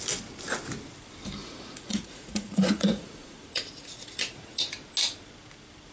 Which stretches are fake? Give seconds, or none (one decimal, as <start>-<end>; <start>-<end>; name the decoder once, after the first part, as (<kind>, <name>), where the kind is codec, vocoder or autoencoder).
1.4-4.7 (vocoder, Vocos)